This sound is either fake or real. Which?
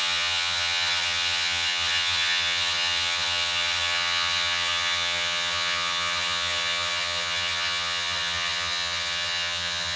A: fake